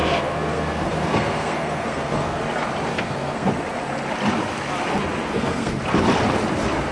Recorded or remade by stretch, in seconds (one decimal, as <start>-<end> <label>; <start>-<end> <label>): 0.0-2.4 remade; 2.4-2.9 recorded; 2.9-3.5 remade; 3.5-5.2 recorded; 5.2-5.8 remade; 5.8-6.9 recorded